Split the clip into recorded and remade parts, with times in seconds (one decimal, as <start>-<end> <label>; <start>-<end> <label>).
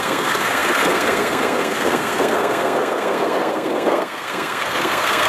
0.0-5.3 remade